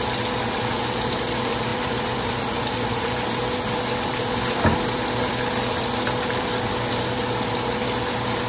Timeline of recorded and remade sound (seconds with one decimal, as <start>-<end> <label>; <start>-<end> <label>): 0.0-8.5 recorded